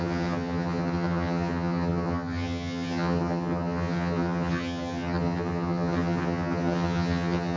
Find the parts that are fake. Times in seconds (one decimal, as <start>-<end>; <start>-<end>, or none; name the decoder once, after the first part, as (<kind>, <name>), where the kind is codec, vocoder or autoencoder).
0.0-7.6 (vocoder, HiFi-GAN)